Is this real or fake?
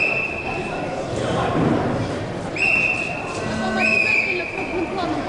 fake